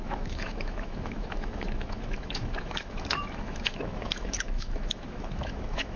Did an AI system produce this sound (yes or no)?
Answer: yes